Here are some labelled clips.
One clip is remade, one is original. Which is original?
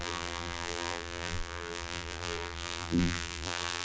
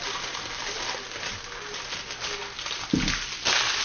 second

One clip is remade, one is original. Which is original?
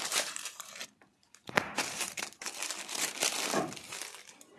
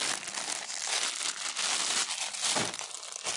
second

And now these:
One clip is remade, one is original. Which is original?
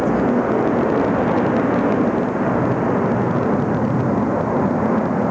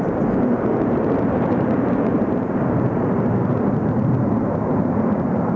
first